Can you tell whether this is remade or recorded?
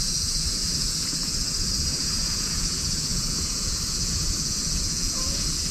remade